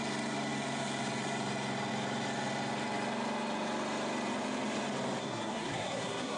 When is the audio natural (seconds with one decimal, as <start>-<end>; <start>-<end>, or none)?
0.0-5.2